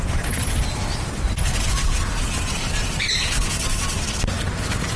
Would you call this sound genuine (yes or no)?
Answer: yes